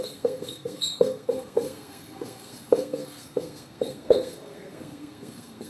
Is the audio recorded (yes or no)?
no